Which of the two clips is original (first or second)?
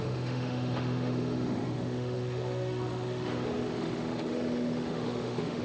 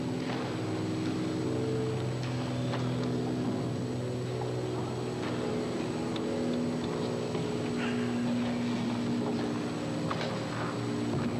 second